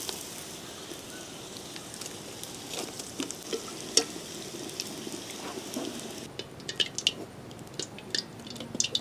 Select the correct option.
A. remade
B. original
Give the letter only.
B